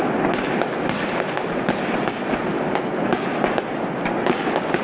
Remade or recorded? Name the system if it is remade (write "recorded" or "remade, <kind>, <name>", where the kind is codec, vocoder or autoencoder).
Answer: recorded